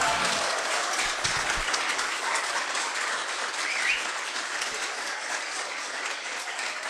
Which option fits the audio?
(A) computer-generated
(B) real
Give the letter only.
A